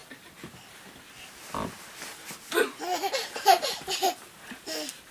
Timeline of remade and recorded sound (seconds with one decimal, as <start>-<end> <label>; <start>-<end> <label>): 0.0-5.1 recorded